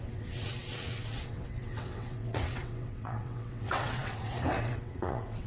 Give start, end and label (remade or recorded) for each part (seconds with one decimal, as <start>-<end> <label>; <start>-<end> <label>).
0.0-5.5 remade